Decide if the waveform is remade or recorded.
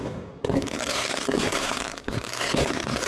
remade